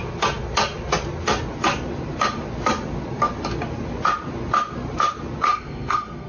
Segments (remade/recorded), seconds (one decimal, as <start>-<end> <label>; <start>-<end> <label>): 0.0-5.5 recorded; 5.5-6.3 remade